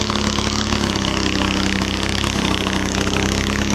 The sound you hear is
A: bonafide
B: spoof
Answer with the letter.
B